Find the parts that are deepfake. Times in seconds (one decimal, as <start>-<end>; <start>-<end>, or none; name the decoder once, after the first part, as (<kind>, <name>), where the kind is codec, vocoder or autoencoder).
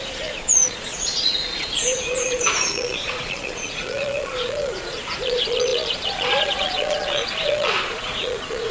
0.0-8.7 (vocoder, Vocos)